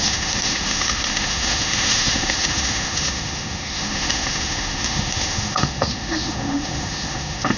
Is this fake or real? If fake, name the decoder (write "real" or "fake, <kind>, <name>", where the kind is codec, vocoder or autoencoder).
fake, autoencoder, DAC-VAE